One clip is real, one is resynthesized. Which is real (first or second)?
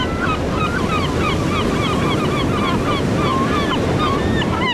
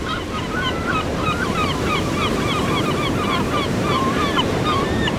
first